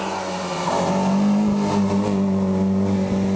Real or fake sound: real